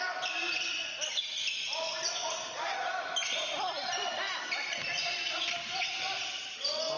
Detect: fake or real real